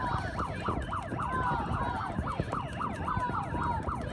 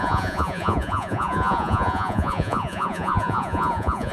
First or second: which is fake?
second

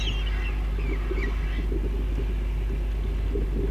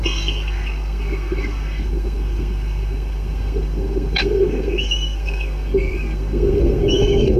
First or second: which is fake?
second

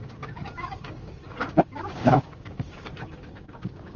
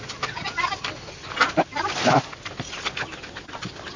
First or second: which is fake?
first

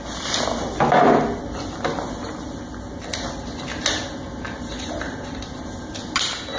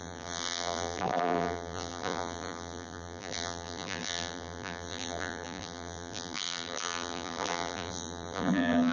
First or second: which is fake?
second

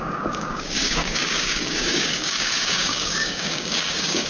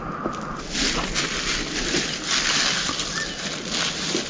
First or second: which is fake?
first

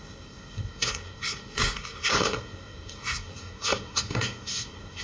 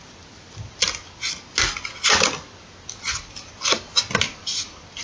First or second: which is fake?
first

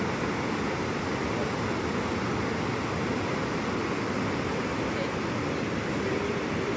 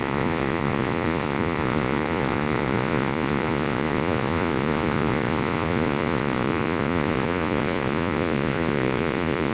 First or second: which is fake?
second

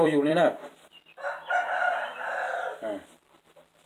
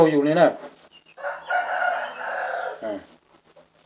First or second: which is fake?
first